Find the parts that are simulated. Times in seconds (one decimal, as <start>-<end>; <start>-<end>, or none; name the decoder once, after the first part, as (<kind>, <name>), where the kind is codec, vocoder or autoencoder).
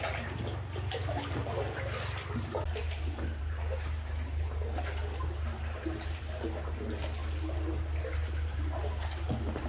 none